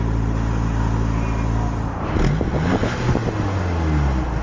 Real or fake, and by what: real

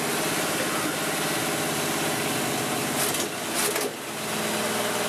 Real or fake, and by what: real